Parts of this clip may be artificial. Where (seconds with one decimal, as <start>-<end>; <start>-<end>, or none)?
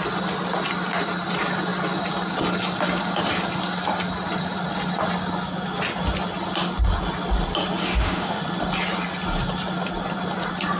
7.8-8.4